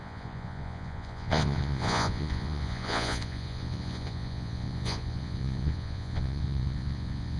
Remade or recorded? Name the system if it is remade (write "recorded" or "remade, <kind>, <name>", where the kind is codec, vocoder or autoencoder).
remade, vocoder, Vocos